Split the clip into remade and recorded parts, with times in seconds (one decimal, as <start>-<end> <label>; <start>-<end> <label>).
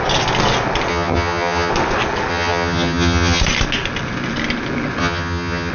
0.0-0.9 recorded; 0.9-1.7 remade; 1.7-2.3 recorded; 2.3-3.4 remade; 3.4-5.0 recorded; 5.0-5.7 remade